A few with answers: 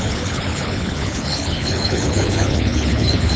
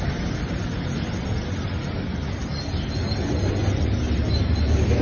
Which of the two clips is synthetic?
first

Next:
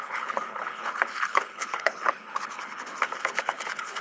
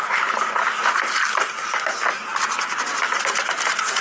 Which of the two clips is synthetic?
first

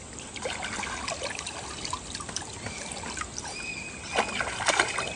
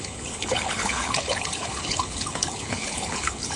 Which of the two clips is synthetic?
second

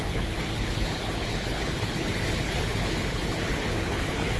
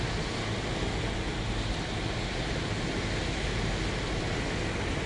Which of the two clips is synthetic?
first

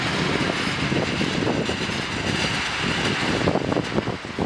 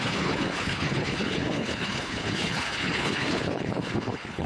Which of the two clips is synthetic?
second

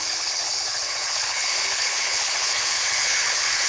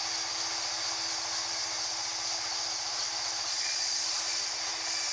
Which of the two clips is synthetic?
first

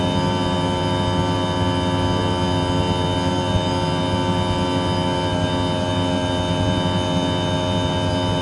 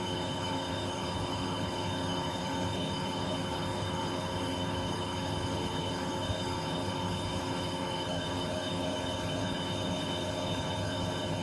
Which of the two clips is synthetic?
second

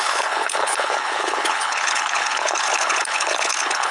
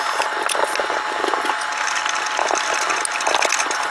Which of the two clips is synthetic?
first